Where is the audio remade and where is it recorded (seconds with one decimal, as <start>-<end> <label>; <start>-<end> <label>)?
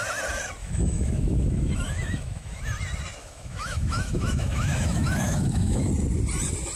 0.0-0.6 recorded; 0.6-2.6 remade; 2.6-3.2 recorded; 3.2-5.9 remade; 5.9-6.8 recorded